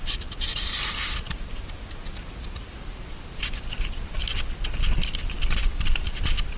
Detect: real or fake real